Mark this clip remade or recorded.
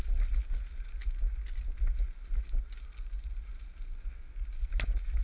recorded